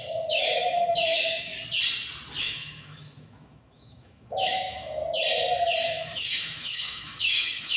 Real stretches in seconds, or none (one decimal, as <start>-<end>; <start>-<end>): 1.5-2.4; 5.0-5.8

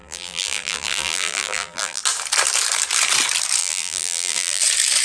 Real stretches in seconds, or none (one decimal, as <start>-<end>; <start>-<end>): 2.0-3.6; 4.6-5.0

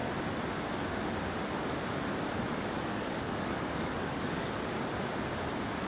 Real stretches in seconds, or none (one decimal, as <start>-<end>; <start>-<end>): 0.0-2.9; 4.5-5.9

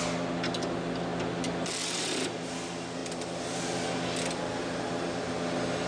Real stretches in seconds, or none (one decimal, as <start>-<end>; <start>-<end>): 0.0-5.9